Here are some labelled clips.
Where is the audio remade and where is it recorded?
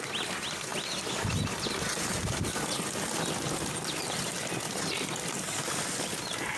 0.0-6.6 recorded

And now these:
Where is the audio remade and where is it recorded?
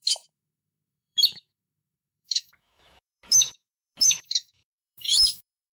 0.0-5.7 remade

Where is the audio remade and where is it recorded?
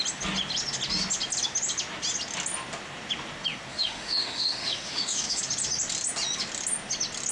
0.0-3.7 recorded; 3.7-5.4 remade; 5.4-7.3 recorded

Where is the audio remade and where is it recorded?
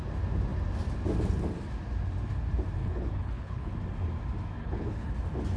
0.0-2.8 recorded; 2.8-3.8 remade; 3.8-4.6 recorded; 4.6-5.1 remade; 5.1-5.6 recorded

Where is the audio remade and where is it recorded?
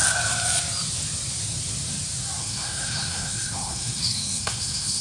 0.0-2.4 recorded; 2.4-5.0 remade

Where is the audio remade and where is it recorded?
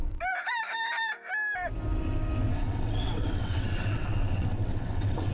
0.0-2.5 recorded; 2.5-5.3 remade